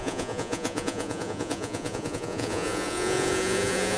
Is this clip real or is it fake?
fake